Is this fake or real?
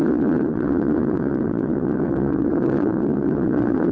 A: fake